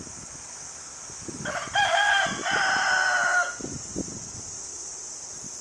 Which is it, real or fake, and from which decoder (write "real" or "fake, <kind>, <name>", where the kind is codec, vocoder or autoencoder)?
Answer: real